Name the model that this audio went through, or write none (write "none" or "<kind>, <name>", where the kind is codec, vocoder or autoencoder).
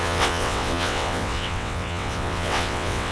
vocoder, WaveNeXt